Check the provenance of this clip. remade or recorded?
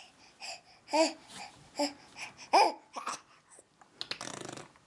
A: recorded